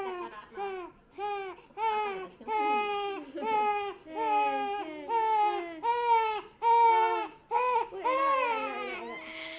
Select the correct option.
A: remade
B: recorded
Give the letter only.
B